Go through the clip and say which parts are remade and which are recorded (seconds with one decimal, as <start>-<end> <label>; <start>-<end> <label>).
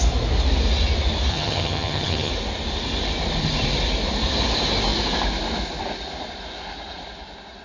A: 0.0-1.3 recorded; 1.3-2.3 remade; 2.3-7.6 recorded